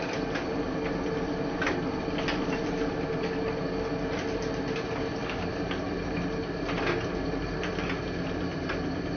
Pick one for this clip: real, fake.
real